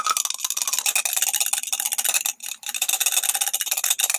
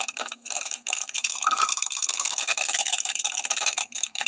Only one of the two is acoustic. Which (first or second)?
first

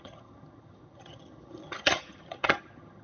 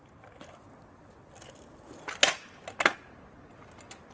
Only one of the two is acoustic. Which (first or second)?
second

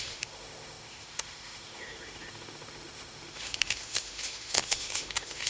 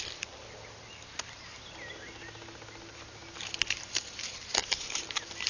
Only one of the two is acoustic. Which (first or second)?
second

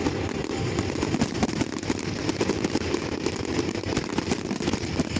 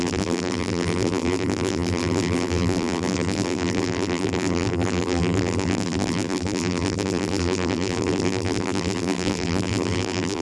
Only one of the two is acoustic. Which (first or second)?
first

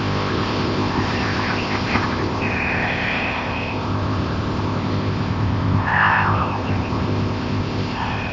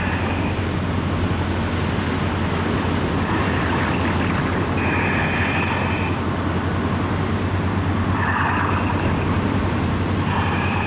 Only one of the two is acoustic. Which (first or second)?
second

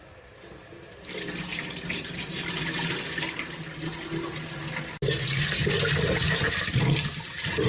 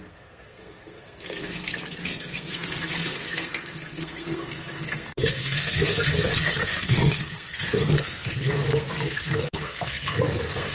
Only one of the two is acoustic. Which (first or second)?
first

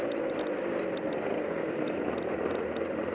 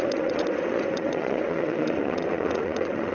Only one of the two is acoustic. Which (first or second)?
first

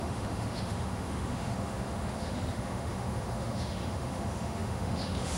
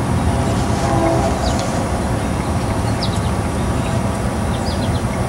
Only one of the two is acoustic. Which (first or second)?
second